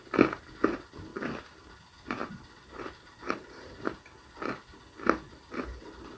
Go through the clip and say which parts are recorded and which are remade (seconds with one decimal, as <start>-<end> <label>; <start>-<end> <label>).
0.0-1.1 recorded; 1.1-1.8 remade; 1.8-2.2 recorded; 2.2-4.0 remade; 4.0-6.2 recorded